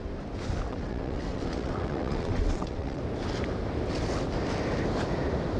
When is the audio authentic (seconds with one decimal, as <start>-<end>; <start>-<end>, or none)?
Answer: 0.0-0.7; 3.0-5.6